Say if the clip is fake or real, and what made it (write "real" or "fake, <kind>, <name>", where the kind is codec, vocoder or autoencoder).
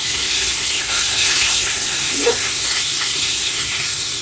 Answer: fake, codec, SNAC